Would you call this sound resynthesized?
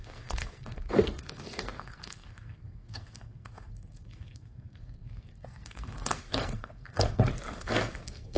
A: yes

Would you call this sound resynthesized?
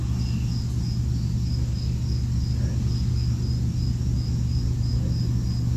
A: no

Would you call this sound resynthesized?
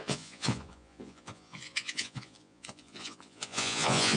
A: yes